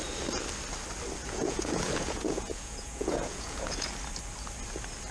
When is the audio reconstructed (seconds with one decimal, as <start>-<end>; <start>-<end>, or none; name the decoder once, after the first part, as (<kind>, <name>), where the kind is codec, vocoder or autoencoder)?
1.2-3.9 (vocoder, Vocos)